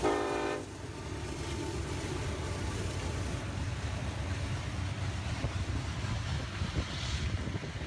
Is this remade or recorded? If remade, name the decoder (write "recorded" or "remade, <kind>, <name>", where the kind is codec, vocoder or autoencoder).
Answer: remade, vocoder, BigVGAN v2